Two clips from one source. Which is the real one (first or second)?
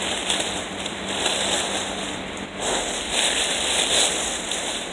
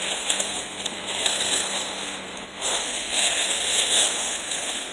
first